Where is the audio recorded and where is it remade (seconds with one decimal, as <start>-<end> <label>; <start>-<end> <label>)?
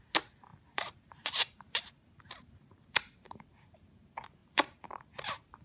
0.0-0.5 recorded; 0.5-3.9 remade; 3.9-4.4 recorded; 4.4-5.6 remade